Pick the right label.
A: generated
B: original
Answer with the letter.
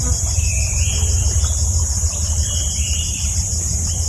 A